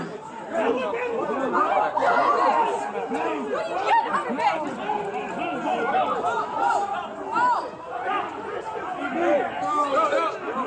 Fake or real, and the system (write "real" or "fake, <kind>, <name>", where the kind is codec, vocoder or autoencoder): real